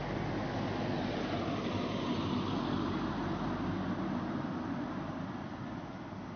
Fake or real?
real